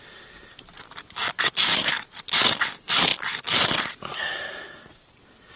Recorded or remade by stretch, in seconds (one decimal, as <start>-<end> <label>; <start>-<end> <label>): 0.0-5.6 recorded

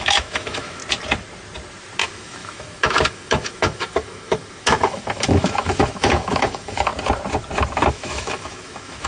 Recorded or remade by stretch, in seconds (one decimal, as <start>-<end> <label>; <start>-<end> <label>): 0.0-0.8 remade; 0.8-2.0 recorded; 2.0-6.9 remade; 6.9-7.9 recorded; 7.9-9.1 remade

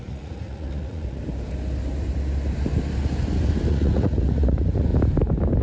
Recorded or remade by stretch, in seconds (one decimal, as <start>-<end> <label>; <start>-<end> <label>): 0.0-1.2 remade; 1.2-3.7 recorded; 3.7-4.9 remade; 4.9-5.6 recorded

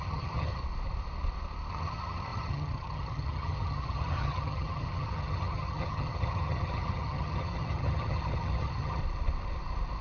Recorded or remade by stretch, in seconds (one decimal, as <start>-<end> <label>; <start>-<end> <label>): 0.0-0.6 remade; 0.6-1.7 recorded; 1.7-9.0 remade; 9.0-10.0 recorded

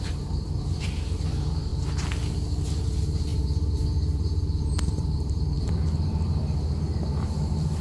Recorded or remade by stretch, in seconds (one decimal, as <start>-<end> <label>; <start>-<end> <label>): 0.0-1.7 remade; 1.7-2.7 recorded; 2.7-7.8 remade

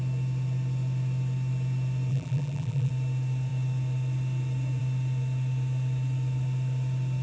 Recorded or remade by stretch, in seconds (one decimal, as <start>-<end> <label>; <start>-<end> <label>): 0.0-2.1 recorded; 2.1-2.9 remade; 2.9-7.2 recorded